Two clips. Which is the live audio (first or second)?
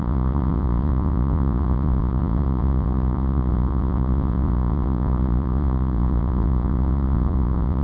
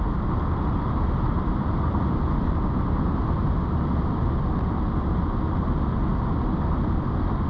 second